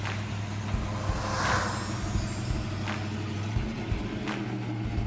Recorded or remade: recorded